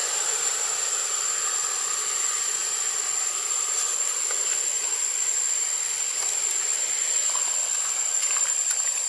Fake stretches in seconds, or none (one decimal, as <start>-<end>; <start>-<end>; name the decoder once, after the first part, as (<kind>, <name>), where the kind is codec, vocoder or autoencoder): none